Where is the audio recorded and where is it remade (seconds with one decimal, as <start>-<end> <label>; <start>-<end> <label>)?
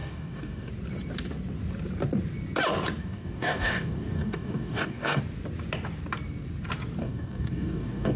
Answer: 0.0-0.7 remade; 0.7-3.0 recorded; 3.0-5.2 remade; 5.2-7.0 recorded; 7.0-8.2 remade